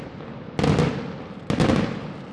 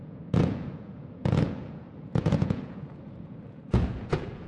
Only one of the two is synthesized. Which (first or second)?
second